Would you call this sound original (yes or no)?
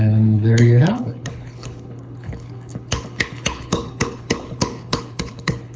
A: no